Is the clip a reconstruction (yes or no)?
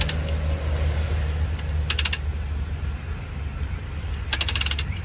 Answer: no